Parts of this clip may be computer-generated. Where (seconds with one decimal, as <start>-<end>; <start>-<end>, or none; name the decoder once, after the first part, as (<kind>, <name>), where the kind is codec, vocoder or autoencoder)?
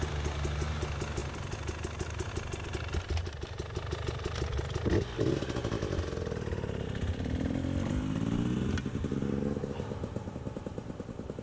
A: none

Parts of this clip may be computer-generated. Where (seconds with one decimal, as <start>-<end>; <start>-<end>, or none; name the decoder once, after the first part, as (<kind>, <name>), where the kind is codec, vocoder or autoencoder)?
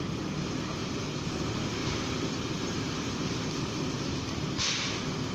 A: 0.8-1.3 (vocoder, BigVGAN v2); 1.8-4.2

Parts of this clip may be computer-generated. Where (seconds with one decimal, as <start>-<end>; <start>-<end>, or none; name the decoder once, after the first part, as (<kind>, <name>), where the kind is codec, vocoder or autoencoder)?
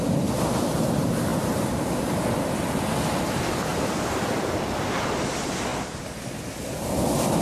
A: 1.3-2.0 (vocoder, BigVGAN v2); 3.7-4.3; 5.7-7.4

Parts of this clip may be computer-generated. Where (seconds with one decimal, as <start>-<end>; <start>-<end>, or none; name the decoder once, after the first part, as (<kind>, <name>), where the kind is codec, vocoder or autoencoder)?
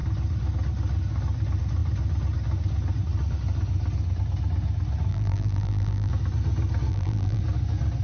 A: 5.1-6.1 (vocoder, BigVGAN v2); 6.9-7.4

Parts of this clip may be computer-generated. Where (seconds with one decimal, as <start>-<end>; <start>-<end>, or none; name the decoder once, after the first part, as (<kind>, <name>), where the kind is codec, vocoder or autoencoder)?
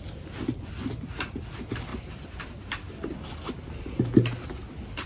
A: none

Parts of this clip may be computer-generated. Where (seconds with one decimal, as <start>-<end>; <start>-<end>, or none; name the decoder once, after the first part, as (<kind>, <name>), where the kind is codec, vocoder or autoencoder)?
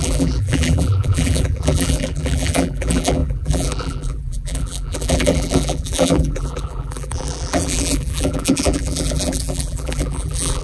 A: 0.0-10.6 (vocoder, BigVGAN v2)